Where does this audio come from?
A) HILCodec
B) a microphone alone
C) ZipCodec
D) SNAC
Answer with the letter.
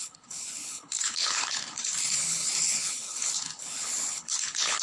A